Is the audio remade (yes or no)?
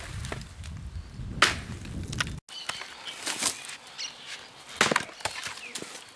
no